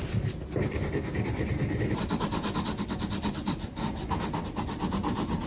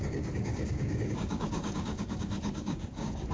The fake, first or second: second